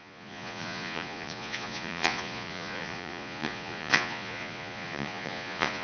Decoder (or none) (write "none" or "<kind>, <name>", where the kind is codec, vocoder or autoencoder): vocoder, Vocos